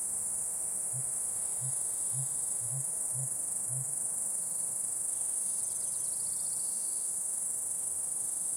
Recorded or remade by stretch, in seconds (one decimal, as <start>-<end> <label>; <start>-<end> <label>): 0.0-5.6 remade; 5.6-6.6 recorded; 6.6-8.6 remade